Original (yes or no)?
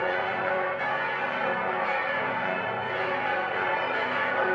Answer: no